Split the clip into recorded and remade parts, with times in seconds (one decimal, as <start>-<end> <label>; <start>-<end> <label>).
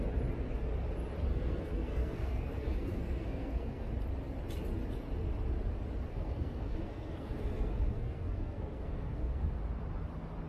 0.0-1.3 recorded; 1.3-3.9 remade; 3.9-6.1 recorded; 6.1-9.6 remade; 9.6-10.5 recorded